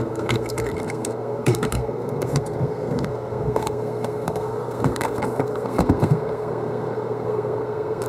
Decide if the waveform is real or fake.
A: fake